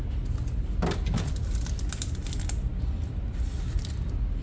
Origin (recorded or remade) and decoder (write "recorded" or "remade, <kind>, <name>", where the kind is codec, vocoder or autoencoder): recorded